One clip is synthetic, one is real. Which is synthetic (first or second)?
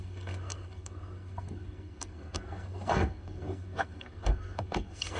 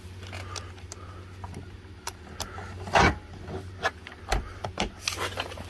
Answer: first